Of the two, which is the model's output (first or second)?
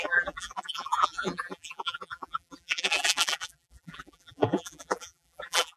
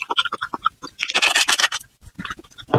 first